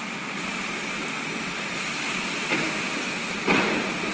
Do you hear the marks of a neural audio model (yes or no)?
no